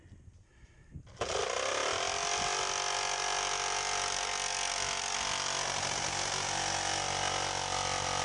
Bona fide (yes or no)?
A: yes